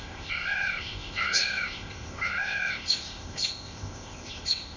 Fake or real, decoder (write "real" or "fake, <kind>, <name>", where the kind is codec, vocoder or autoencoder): fake, codec, ZipCodec